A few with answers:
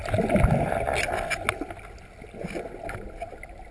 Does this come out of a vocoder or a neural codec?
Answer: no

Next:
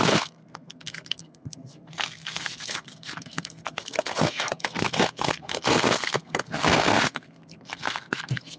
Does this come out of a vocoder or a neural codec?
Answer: yes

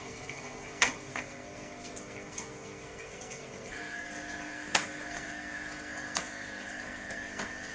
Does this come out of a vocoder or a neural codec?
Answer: yes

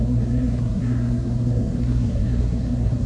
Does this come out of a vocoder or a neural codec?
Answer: yes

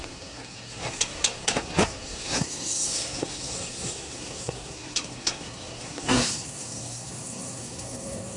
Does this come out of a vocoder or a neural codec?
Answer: yes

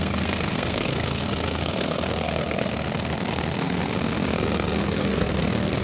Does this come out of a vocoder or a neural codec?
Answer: yes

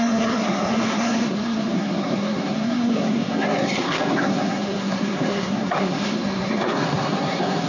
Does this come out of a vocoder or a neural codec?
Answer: yes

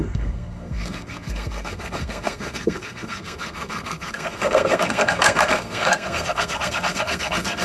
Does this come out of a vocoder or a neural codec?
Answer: yes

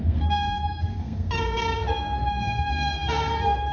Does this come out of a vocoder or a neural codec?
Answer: yes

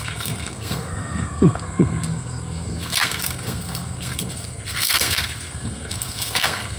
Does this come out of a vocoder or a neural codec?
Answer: yes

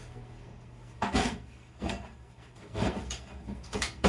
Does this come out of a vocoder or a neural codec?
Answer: yes